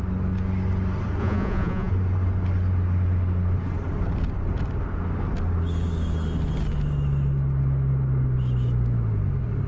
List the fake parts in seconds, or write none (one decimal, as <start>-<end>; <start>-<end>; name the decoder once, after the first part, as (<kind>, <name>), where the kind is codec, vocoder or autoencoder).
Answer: 1.2-1.9 (vocoder, Vocos)